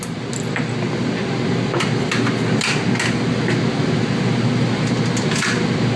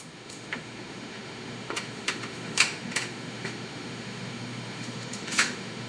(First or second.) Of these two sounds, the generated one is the second